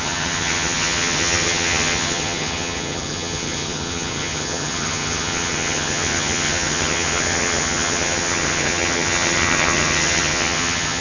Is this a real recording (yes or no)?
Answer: no